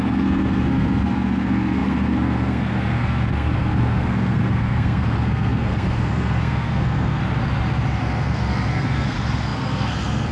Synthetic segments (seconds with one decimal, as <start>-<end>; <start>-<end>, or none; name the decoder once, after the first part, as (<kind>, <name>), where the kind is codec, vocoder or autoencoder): 0.0-7.2 (codec, SNAC); 8.0-10.3